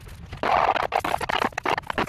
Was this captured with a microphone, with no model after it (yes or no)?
yes